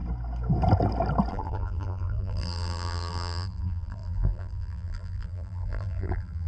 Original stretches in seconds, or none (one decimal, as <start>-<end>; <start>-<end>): 0.0-1.3

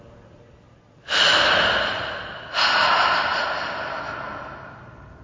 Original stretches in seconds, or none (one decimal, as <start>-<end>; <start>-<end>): 0.0-5.2

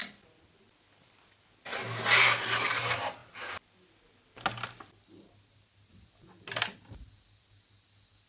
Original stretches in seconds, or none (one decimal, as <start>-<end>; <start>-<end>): 0.0-8.3

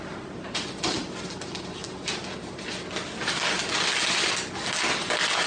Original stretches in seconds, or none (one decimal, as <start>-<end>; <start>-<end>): 0.0-5.5

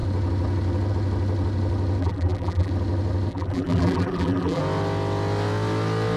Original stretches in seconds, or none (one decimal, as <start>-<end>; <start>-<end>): 0.0-2.0; 2.7-3.3; 4.6-6.2

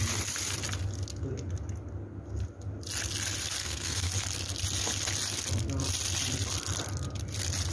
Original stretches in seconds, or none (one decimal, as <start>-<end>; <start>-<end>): 0.0-3.6; 4.1-7.7

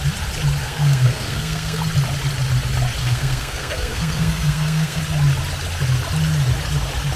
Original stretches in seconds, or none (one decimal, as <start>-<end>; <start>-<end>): 0.0-0.6; 1.8-3.0; 5.0-7.2

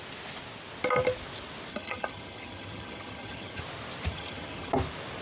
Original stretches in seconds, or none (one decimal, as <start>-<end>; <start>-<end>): 0.0-1.7; 3.6-4.1; 4.7-5.2